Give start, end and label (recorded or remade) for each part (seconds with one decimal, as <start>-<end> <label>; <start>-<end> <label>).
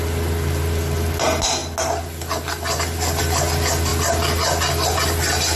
0.0-5.6 recorded